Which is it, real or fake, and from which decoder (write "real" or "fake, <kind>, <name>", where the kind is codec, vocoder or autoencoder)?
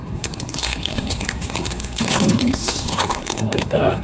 fake, codec, SNAC